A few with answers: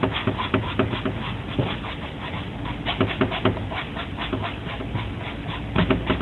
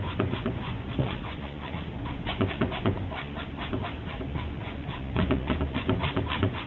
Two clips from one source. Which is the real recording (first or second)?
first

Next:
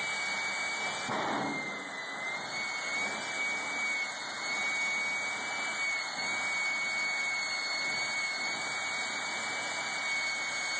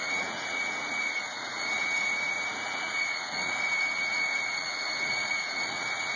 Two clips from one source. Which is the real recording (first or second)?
first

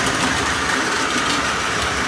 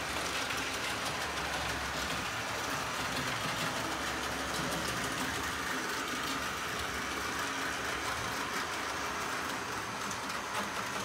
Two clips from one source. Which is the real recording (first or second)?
second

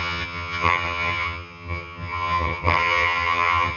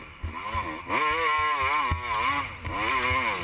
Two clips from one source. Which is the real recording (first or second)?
second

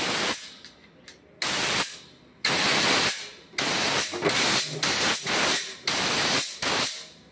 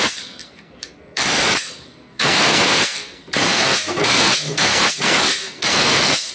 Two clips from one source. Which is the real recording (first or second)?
first